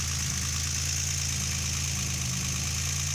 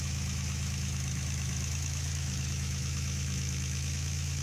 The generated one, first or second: second